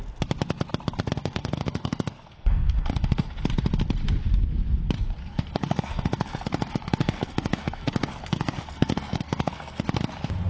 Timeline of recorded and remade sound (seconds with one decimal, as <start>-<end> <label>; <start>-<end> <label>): 0.0-1.2 recorded; 1.2-3.3 remade; 3.3-5.2 recorded; 5.2-9.8 remade; 9.8-10.5 recorded